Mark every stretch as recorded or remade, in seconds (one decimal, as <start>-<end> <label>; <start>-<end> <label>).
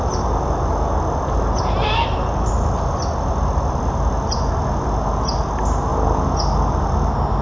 0.0-7.4 recorded